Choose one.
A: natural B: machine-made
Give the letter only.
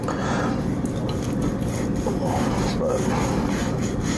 A